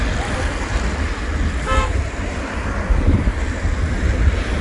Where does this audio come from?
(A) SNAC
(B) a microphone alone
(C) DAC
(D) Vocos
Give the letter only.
B